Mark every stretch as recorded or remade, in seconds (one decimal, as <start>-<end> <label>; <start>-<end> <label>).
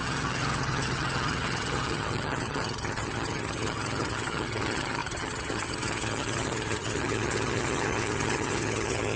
0.0-9.2 remade